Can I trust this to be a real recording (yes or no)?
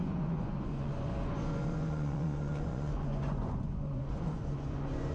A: no